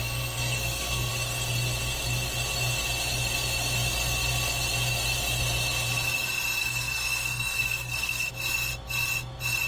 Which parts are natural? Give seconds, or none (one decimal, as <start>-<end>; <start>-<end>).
1.1-6.6; 8.3-9.7